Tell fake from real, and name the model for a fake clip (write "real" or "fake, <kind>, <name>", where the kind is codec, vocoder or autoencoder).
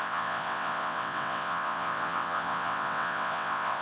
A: fake, vocoder, WaveNeXt